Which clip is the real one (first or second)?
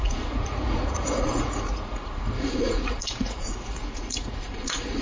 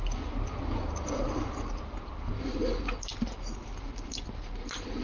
second